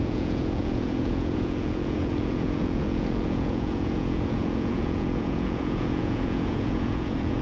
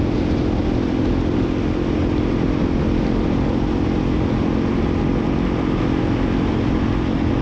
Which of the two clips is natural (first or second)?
second